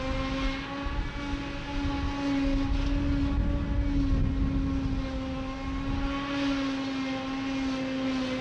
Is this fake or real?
real